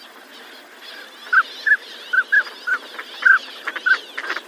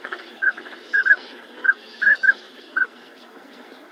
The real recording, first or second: first